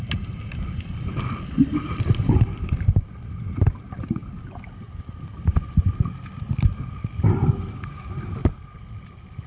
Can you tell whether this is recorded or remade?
recorded